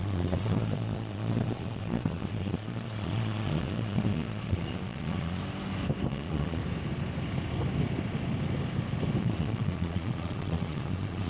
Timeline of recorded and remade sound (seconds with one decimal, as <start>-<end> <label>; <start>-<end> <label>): 0.0-5.4 remade; 5.4-6.1 recorded; 6.1-6.6 remade; 6.6-9.2 recorded; 9.2-11.3 remade